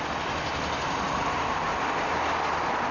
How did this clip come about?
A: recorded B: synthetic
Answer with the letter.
A